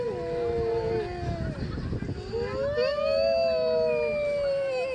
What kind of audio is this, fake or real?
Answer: real